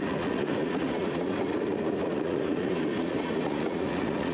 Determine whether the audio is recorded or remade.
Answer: remade